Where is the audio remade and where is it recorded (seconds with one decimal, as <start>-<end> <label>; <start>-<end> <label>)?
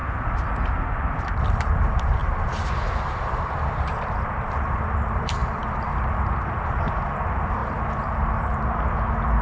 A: 0.0-1.2 recorded; 1.2-9.4 remade